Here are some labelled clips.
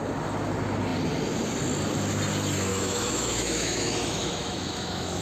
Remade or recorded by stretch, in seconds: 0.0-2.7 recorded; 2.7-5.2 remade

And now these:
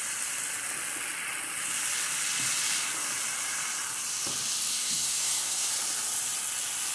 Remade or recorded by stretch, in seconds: 0.0-4.7 recorded; 4.7-5.7 remade; 5.7-6.9 recorded

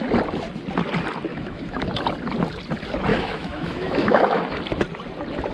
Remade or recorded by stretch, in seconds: 0.0-1.3 recorded; 1.3-1.9 remade; 1.9-3.1 recorded; 3.1-4.4 remade; 4.4-5.5 recorded

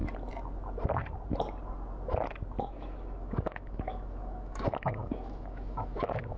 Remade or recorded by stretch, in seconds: 0.0-2.6 recorded; 2.6-6.4 remade

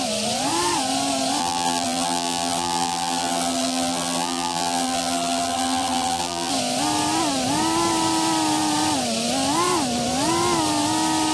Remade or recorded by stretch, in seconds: 0.0-1.4 recorded; 1.4-6.5 remade; 6.5-11.3 recorded